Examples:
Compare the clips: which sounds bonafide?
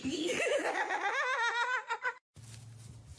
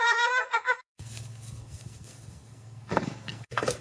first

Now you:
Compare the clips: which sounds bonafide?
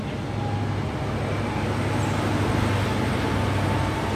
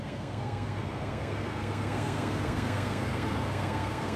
first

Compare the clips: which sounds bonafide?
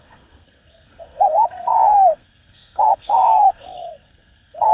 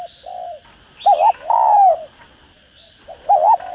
second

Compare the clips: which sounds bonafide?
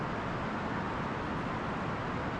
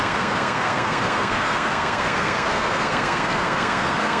first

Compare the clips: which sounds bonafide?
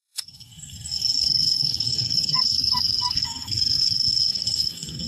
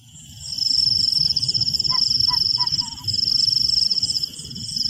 second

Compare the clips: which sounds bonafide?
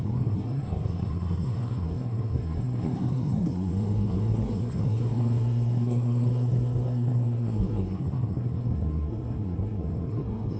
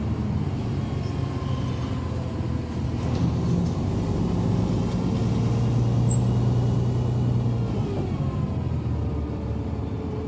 second